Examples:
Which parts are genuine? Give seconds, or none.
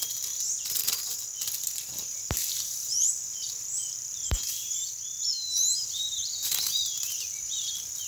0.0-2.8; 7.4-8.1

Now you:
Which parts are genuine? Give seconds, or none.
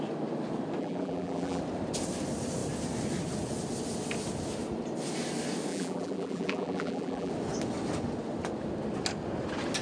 0.0-0.8; 1.6-5.7; 7.3-9.8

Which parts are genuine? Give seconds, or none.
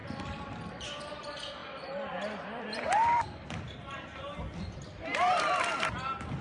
1.0-1.6; 5.4-6.4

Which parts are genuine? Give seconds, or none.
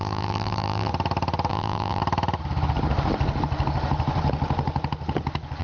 0.9-1.5; 2.0-5.6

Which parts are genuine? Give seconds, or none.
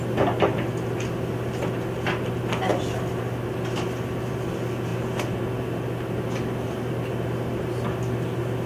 0.0-8.7